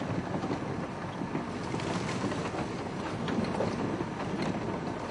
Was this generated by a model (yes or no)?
no